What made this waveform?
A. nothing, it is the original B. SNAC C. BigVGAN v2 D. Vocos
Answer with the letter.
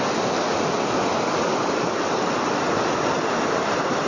A